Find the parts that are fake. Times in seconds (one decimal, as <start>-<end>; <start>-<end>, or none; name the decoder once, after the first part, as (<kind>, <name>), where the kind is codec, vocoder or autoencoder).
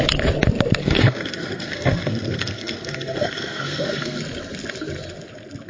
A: 0.8-4.2 (codec, SNAC)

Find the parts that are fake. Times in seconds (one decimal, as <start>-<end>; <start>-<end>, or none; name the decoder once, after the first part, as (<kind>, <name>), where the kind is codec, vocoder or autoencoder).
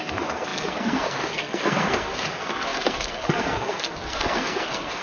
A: 0.0-5.0 (codec, SNAC)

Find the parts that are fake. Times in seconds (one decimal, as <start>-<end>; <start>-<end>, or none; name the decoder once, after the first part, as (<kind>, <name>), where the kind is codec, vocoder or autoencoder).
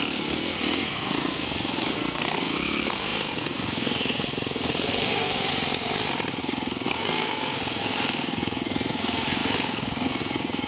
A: 0.0-5.5 (codec, SNAC); 6.4-10.7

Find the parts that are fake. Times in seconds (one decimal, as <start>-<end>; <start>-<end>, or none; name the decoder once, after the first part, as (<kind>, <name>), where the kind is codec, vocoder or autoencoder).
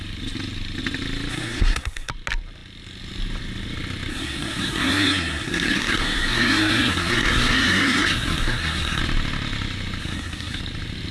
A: 1.3-2.1 (codec, SNAC); 4.1-9.0; 10.0-10.6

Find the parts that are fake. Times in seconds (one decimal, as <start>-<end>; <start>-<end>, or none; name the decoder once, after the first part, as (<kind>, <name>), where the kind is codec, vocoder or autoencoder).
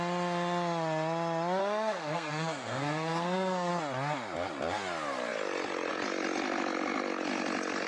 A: 1.6-3.7 (codec, SNAC)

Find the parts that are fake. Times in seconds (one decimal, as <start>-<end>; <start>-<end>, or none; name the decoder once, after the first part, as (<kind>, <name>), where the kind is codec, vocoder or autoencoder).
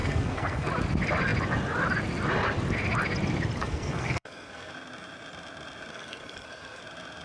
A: 0.0-0.7 (codec, SNAC); 3.6-4.7; 5.9-6.8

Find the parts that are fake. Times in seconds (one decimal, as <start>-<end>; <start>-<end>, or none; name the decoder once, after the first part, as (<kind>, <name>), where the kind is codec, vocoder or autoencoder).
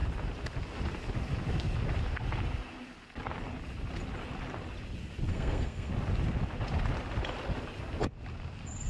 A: 5.3-5.9 (codec, SNAC)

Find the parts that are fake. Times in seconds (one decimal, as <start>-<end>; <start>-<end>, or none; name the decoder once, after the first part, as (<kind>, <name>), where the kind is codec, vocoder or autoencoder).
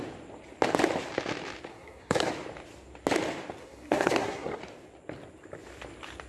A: 1.7-2.3 (codec, SNAC); 3.6-4.6